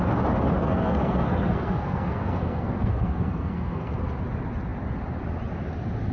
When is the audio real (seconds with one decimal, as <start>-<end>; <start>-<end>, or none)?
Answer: 0.0-0.6; 4.0-6.1